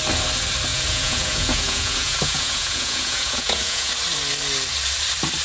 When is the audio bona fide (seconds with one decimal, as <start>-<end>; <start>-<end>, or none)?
0.0-0.7; 3.9-5.4

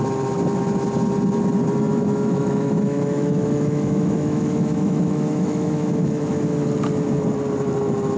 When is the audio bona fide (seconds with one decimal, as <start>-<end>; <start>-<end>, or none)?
0.0-1.9; 6.3-8.2

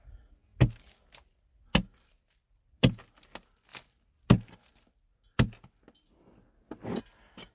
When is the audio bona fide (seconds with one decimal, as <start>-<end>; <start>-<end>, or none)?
0.0-7.5

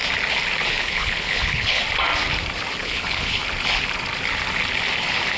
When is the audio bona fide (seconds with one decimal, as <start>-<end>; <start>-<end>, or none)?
0.0-0.7; 1.8-2.8; 3.4-5.4

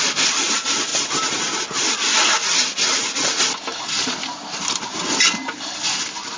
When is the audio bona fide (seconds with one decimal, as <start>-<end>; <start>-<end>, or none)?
0.0-6.4

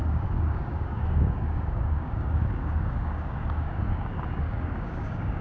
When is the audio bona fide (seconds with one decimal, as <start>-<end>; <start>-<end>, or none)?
none

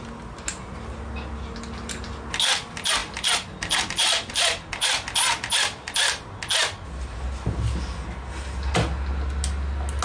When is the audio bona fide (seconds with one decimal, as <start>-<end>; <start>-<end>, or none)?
0.0-10.0